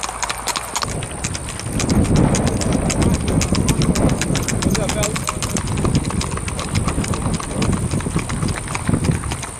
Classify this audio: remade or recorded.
recorded